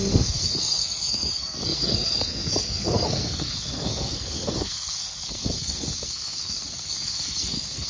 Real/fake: fake